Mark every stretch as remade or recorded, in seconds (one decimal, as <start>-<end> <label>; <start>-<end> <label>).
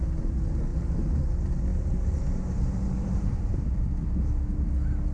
0.0-0.7 recorded; 0.7-1.2 remade; 1.2-1.7 recorded; 1.7-3.8 remade; 3.8-5.1 recorded